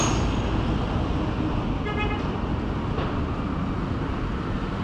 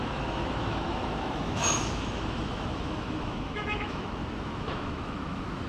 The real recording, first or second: first